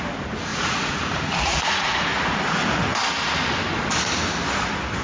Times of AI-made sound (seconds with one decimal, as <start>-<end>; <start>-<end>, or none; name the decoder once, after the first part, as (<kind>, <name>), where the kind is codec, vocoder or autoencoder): 0.5-2.0 (vocoder, Vocos)